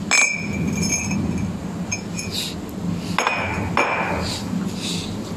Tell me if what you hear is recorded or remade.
recorded